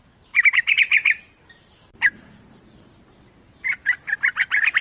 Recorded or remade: recorded